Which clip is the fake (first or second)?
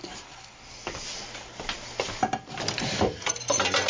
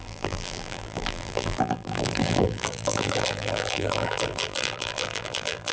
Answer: second